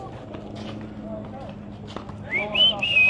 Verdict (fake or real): real